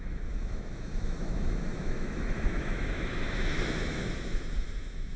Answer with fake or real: fake